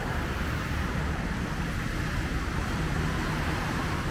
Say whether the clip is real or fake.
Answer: real